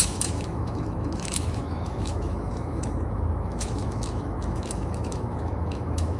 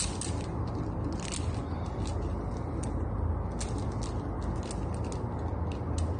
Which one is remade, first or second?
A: first